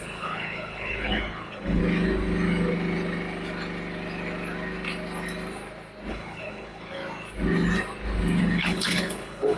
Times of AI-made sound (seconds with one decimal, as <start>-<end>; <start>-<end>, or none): 0.0-1.8; 6.1-7.0; 8.4-9.6